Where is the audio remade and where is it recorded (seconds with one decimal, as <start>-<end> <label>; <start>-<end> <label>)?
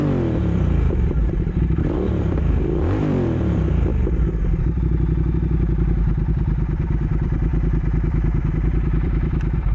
0.0-3.9 remade; 3.9-6.3 recorded; 6.3-9.7 remade